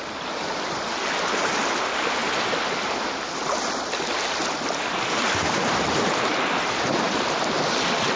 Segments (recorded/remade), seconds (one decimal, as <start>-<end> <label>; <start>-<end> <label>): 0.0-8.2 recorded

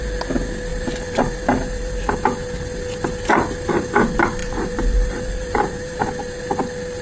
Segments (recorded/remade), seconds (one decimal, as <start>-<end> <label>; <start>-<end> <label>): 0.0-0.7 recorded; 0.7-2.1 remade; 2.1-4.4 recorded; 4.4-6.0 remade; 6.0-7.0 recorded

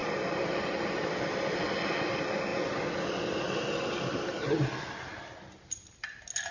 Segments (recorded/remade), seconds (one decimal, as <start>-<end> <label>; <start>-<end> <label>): 0.0-6.5 recorded